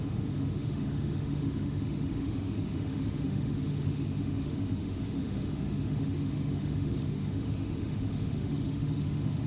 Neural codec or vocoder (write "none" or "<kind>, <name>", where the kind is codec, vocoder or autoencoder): autoencoder, DAC-VAE